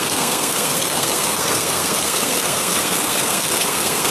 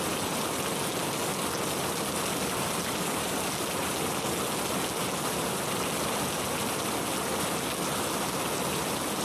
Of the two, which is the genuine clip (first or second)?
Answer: second